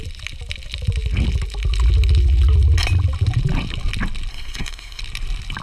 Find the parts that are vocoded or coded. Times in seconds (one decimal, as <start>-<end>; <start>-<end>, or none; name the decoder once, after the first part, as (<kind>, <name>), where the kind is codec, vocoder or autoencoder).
4.3-5.0 (codec, SNAC)